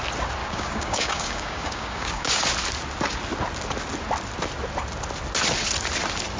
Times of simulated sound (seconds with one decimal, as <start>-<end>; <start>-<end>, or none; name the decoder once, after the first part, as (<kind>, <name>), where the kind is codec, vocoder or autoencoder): 0.4-2.4 (codec, DAC)